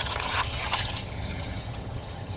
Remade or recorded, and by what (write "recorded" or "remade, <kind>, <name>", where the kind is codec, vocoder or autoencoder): remade, vocoder, HiFi-GAN